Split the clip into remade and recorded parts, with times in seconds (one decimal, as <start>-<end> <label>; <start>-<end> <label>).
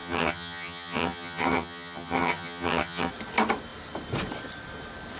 0.0-3.1 remade; 3.1-5.2 recorded